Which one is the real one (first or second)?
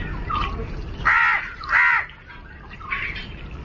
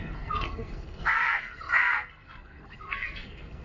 first